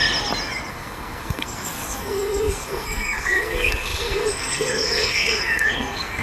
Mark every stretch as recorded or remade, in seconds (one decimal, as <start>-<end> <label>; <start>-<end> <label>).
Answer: 0.0-0.7 recorded; 0.7-6.2 remade